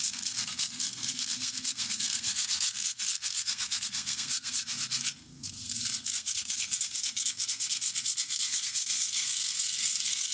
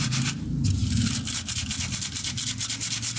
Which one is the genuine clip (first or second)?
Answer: second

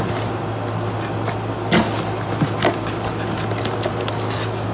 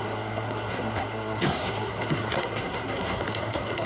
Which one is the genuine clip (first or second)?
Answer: first